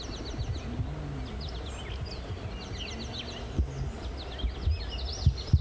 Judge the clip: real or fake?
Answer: real